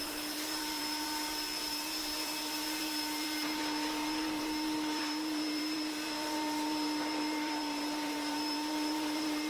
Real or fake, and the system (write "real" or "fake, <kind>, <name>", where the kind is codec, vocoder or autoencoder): fake, vocoder, BigVGAN v2